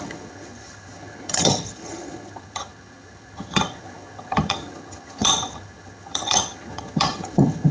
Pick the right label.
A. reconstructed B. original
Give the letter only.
A